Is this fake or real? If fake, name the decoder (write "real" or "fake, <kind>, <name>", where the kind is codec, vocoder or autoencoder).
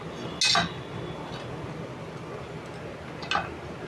real